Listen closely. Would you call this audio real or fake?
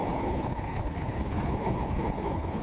fake